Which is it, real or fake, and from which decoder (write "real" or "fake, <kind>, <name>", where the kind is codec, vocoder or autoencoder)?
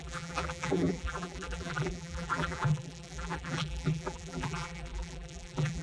fake, vocoder, BigVGAN v2